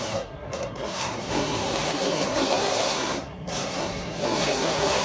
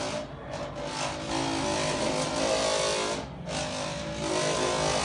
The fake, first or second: first